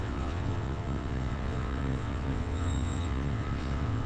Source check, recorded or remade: remade